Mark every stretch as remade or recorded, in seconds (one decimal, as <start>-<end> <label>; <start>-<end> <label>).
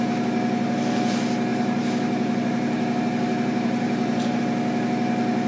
0.0-1.5 recorded; 1.5-4.4 remade; 4.4-5.5 recorded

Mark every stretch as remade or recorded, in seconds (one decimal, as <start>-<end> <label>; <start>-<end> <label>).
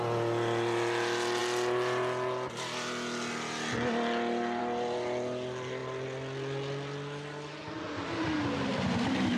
0.0-9.4 recorded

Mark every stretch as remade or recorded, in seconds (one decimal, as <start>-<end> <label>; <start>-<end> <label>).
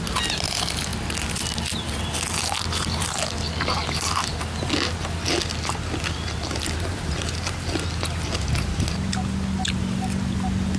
0.0-10.8 recorded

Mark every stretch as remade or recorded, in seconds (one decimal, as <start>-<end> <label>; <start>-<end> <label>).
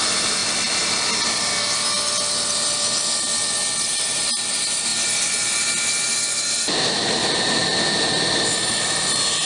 0.0-0.4 remade; 0.4-3.8 recorded; 3.8-4.9 remade; 4.9-8.8 recorded; 8.8-9.5 remade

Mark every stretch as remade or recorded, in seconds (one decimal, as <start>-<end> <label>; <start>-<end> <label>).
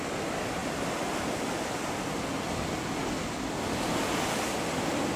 0.0-5.2 recorded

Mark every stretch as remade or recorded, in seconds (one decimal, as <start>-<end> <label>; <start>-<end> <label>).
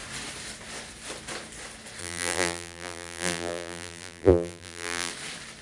0.0-2.0 recorded; 2.0-5.1 remade; 5.1-5.6 recorded